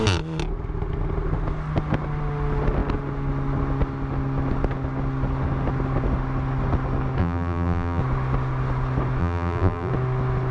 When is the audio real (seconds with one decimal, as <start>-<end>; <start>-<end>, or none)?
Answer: 0.0-7.2; 8.0-9.2; 9.9-10.5